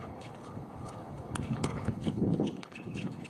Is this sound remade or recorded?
remade